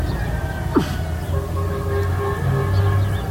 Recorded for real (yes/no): yes